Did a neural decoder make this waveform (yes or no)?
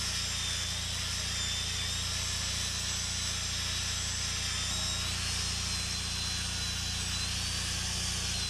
no